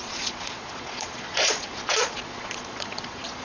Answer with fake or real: fake